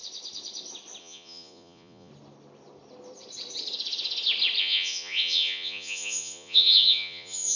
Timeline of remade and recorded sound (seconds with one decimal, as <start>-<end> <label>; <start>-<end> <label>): 0.0-1.0 recorded; 1.0-2.1 remade; 2.1-4.6 recorded; 4.6-7.6 remade